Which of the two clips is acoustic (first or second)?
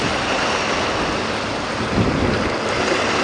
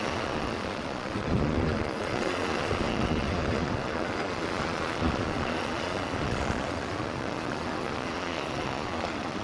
first